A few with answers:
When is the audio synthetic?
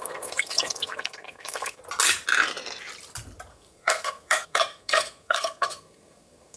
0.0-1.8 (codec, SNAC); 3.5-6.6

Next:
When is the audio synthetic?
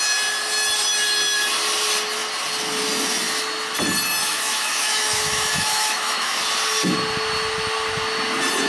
4.2-6.4 (autoencoder, DAC-VAE)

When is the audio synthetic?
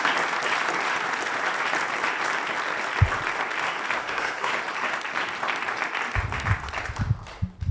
4.0-4.5 (codec, SNAC)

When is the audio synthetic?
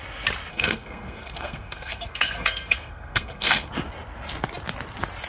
0.5-3.7 (codec, SNAC)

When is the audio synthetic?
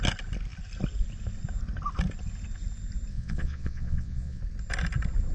3.1-4.4 (vocoder, Vocos)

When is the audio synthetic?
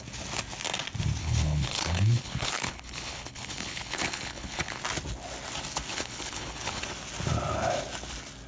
1.2-4.8 (codec, HILCodec); 5.9-6.8